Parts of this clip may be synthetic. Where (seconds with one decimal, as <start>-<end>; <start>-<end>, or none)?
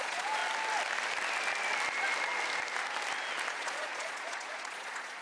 0.0-0.4; 3.5-5.2